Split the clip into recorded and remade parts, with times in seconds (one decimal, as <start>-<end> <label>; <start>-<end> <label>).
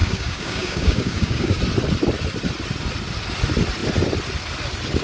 0.0-1.6 remade; 1.6-5.0 recorded